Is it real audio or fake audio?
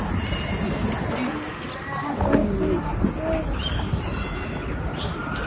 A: real